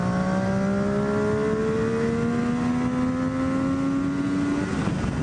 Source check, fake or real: real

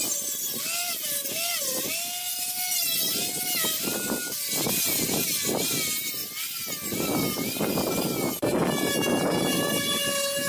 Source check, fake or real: real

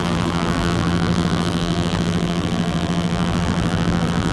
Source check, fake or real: fake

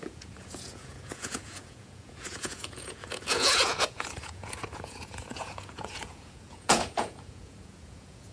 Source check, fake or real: fake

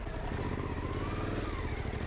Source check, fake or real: real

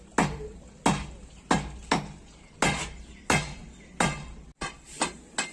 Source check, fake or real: real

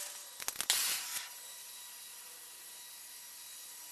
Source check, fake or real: real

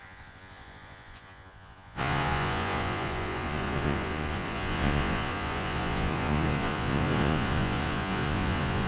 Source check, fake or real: fake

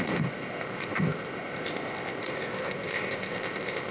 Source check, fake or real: fake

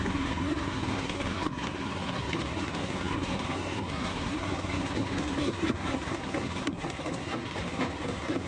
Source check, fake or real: fake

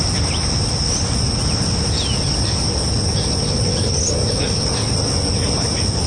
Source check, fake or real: real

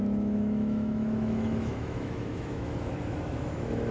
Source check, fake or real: fake